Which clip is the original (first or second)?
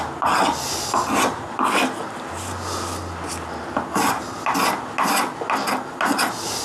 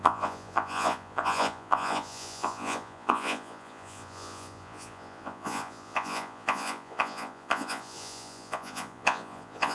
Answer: first